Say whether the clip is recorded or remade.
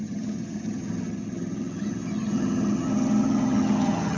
remade